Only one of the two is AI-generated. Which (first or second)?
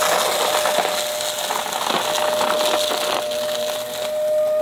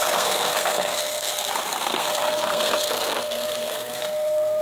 second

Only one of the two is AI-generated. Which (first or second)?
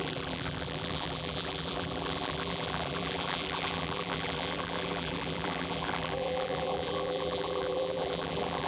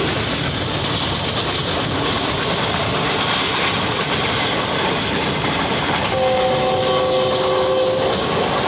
first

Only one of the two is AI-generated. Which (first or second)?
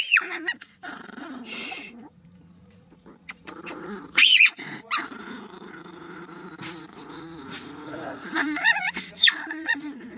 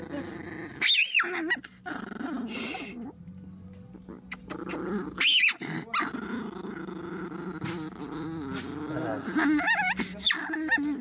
first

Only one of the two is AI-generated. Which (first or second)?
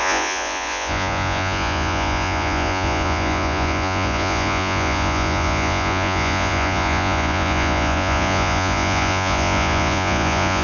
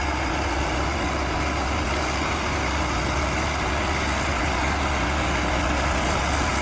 first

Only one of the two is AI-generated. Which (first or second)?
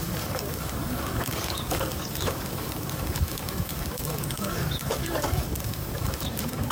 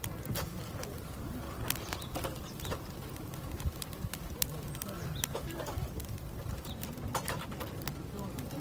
first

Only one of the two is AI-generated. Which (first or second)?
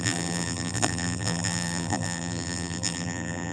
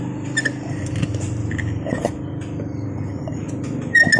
first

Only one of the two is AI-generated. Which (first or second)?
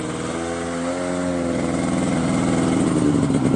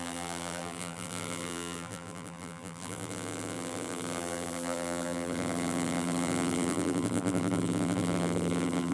second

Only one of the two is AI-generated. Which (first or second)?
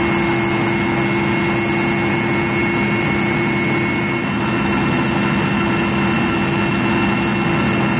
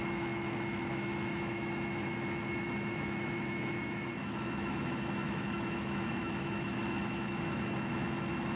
second